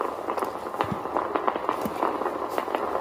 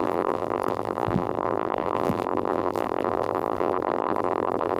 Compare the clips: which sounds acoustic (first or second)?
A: first